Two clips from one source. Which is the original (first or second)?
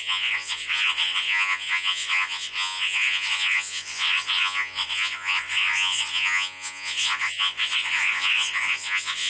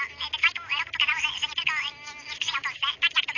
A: second